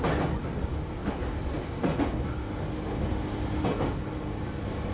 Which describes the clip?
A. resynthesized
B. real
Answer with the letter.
B